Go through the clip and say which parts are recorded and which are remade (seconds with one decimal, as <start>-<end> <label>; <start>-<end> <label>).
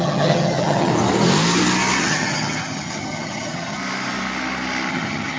0.0-0.9 remade; 0.9-2.0 recorded; 2.0-3.8 remade; 3.8-4.9 recorded; 4.9-5.4 remade